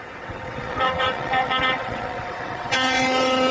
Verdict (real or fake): fake